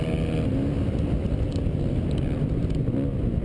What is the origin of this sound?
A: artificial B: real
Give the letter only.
B